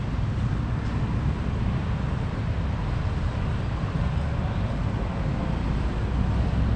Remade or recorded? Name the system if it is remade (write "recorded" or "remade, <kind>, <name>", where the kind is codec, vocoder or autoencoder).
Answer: recorded